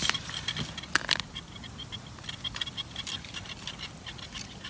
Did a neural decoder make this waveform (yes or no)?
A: no